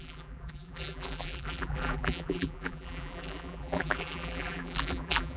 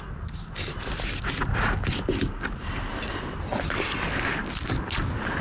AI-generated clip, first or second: first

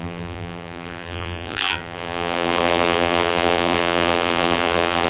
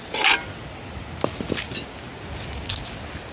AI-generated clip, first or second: first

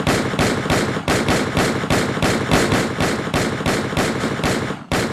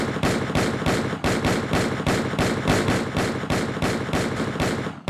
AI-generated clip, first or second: first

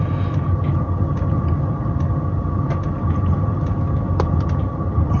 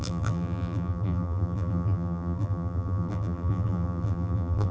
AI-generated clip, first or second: second